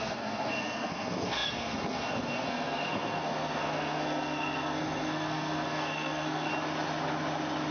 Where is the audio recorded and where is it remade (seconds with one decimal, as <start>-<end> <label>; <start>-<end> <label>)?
0.0-6.5 remade; 6.5-7.7 recorded

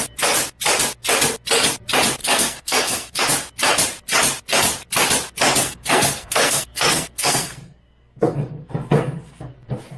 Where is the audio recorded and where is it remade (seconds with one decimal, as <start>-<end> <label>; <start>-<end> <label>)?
0.0-2.2 recorded; 2.2-3.2 remade; 3.2-5.6 recorded; 5.6-9.5 remade; 9.5-10.0 recorded

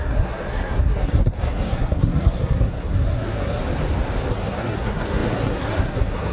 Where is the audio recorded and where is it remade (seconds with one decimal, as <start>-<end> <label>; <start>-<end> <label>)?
0.0-3.6 remade; 3.6-4.3 recorded; 4.3-6.3 remade

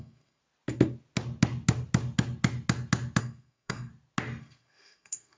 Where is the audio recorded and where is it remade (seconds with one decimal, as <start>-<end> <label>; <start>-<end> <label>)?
0.0-0.4 remade; 0.4-3.2 recorded; 3.2-3.9 remade; 3.9-4.4 recorded; 4.4-5.4 remade

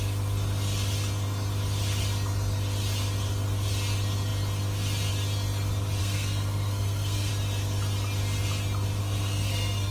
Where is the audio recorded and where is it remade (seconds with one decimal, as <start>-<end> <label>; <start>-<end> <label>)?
0.0-6.0 recorded; 6.0-7.3 remade; 7.3-9.0 recorded; 9.0-9.9 remade

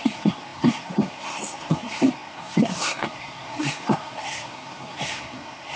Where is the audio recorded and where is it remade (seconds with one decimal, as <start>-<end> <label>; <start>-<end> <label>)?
0.0-5.8 remade

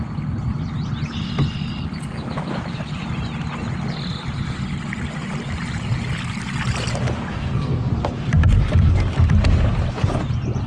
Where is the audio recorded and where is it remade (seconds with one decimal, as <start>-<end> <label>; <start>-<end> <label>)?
0.0-7.3 recorded; 7.3-7.9 remade; 7.9-10.7 recorded